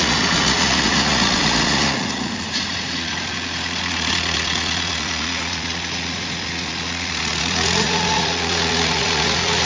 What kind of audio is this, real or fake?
fake